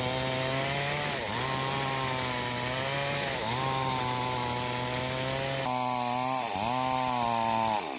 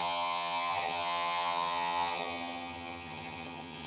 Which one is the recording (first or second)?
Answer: first